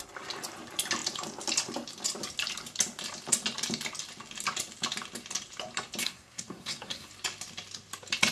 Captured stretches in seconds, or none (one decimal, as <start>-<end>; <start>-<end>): 0.0-6.0; 7.1-8.3